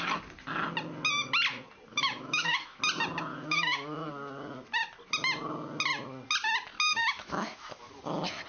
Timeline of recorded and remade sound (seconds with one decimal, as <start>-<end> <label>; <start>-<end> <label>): 0.0-1.9 recorded; 1.9-2.8 remade; 2.8-3.3 recorded; 3.3-4.1 remade; 4.1-6.9 recorded; 6.9-7.9 remade; 7.9-8.5 recorded